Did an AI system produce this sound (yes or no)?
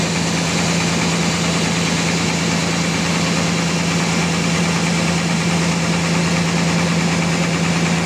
no